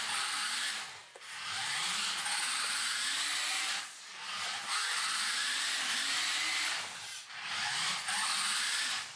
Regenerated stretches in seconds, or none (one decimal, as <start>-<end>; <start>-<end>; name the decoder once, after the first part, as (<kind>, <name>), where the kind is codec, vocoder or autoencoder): none